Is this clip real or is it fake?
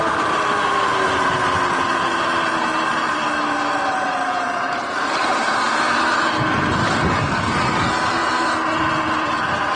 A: real